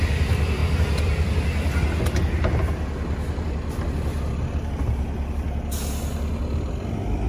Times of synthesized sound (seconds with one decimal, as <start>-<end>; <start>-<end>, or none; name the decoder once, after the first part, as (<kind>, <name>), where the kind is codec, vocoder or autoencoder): none